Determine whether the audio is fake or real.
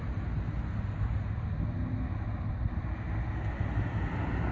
real